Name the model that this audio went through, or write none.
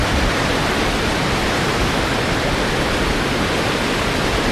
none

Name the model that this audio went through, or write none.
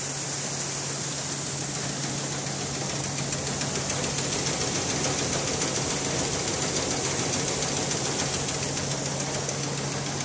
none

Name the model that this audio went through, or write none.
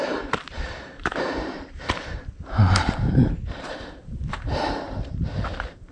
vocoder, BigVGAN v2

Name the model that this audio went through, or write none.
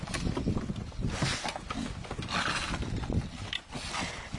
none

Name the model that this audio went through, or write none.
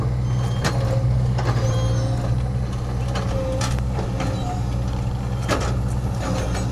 none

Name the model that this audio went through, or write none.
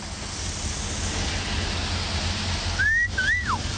none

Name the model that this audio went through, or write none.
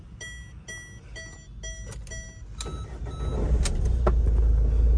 none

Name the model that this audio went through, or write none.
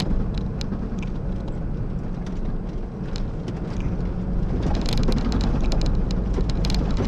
none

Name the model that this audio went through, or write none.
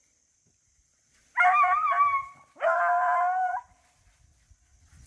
vocoder, BigVGAN v2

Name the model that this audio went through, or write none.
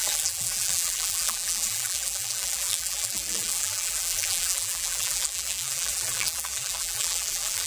vocoder, BigVGAN v2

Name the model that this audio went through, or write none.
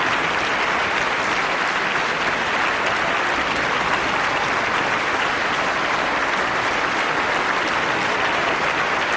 none